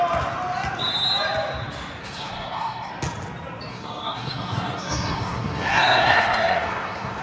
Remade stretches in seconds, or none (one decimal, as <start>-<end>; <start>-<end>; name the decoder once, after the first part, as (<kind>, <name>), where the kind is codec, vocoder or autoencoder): 2.0-2.9 (codec, SNAC); 3.7-7.2